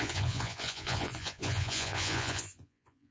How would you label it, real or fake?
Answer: fake